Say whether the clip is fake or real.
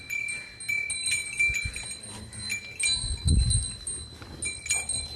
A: real